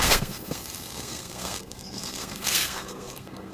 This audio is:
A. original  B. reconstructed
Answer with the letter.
B